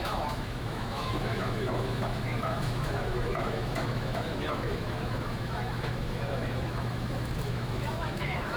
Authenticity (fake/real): fake